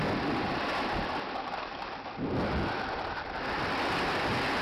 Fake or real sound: real